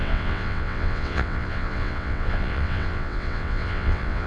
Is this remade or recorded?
remade